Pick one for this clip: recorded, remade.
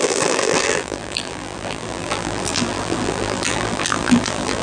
remade